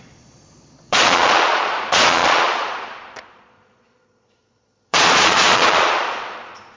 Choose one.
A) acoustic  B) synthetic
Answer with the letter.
B